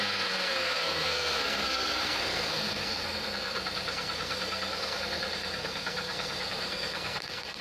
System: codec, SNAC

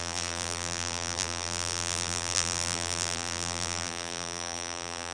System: vocoder, BigVGAN v2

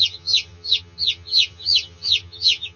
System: vocoder, HiFi-GAN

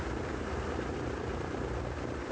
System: none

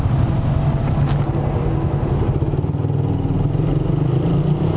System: none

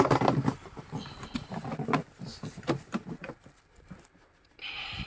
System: none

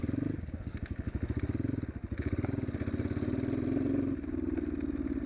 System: none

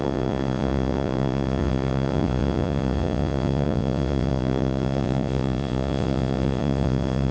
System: vocoder, Vocos